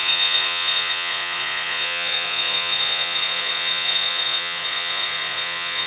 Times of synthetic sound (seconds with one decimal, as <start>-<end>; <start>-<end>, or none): 0.0-5.9

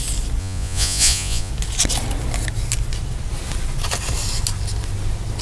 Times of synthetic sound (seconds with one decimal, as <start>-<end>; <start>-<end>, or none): 0.4-1.5

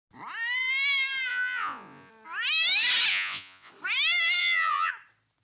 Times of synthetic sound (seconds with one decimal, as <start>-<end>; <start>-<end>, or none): 1.3-2.1; 3.1-3.7; 4.4-4.9

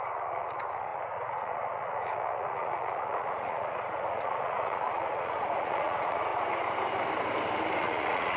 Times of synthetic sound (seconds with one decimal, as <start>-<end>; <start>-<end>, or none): 0.0-6.3; 7.8-8.4